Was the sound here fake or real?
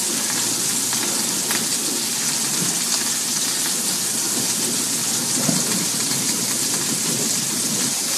real